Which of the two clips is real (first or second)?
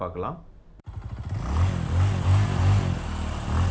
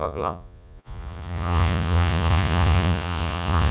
first